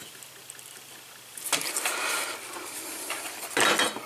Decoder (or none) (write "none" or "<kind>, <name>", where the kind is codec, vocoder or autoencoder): none